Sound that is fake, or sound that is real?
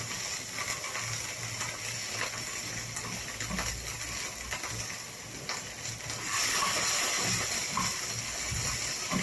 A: real